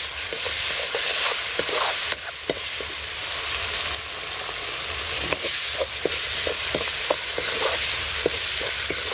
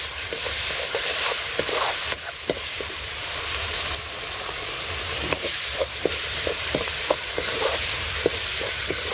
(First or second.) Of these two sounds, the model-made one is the second